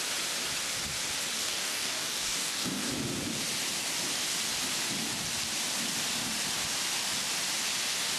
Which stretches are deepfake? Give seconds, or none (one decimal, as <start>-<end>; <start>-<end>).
1.4-2.9